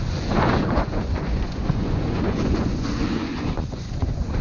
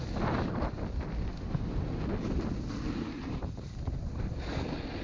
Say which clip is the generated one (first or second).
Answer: first